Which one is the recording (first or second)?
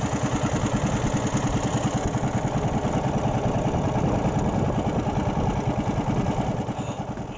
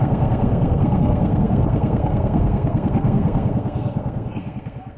first